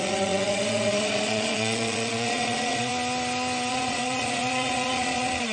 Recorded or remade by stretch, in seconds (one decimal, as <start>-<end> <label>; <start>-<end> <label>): 0.0-2.9 remade; 2.9-3.7 recorded; 3.7-5.5 remade

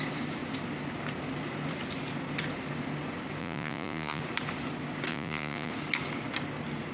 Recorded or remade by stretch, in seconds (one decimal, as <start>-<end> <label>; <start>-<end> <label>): 0.0-3.4 recorded; 3.4-4.2 remade; 4.2-5.1 recorded; 5.1-5.7 remade; 5.7-6.9 recorded

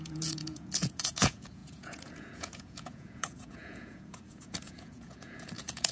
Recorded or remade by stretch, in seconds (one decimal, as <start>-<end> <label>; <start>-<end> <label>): 0.0-5.9 remade

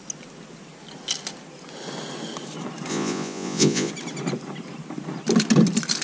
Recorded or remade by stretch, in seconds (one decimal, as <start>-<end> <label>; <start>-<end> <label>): 0.0-2.9 recorded; 2.9-3.9 remade; 3.9-6.0 recorded